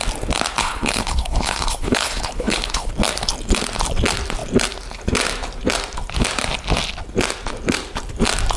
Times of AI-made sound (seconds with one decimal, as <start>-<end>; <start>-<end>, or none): 0.6-2.9